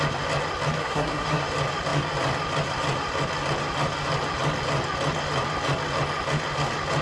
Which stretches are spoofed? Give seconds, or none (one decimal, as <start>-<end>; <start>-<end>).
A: 0.8-1.4